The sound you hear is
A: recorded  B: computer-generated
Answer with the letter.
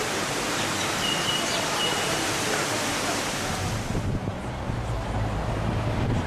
A